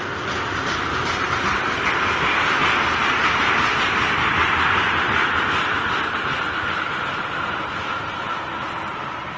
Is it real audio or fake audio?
real